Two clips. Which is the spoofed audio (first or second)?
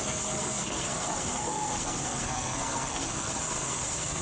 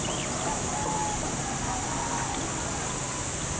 first